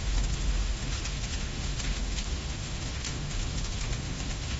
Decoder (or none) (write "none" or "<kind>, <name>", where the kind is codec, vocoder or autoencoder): autoencoder, DAC-VAE